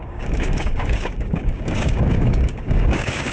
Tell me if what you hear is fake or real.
fake